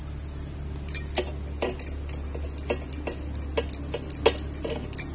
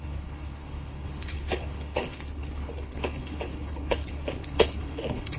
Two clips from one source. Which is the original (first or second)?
first